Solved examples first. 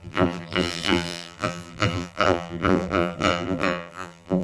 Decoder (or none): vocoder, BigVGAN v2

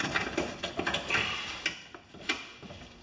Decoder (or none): none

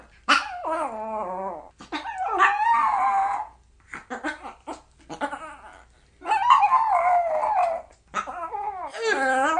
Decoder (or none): none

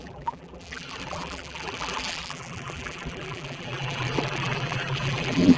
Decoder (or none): vocoder, BigVGAN v2